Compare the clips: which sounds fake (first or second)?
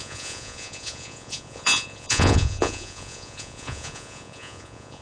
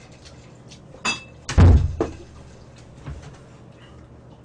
first